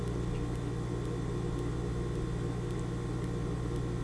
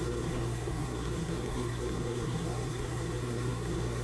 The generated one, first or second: second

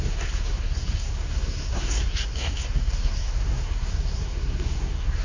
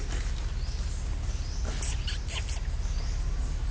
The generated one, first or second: first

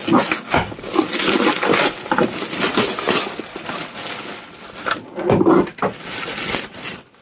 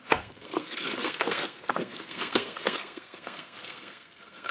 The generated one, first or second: second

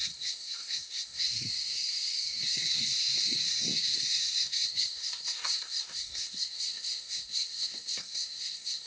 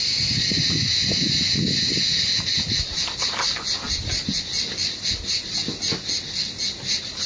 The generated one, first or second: first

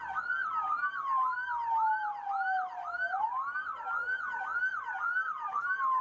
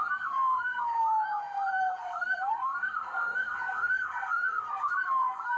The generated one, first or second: second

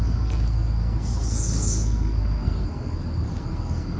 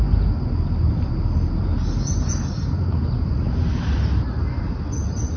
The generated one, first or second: first